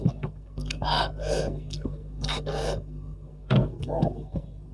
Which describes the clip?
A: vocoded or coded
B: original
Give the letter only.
A